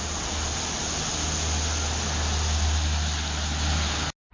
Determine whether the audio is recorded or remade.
recorded